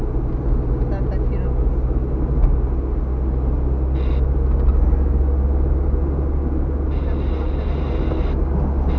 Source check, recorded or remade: recorded